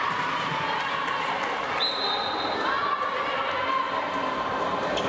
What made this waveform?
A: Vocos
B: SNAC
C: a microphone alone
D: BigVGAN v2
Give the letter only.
C